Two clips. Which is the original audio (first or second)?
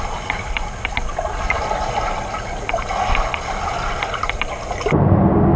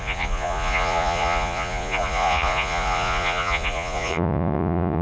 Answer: first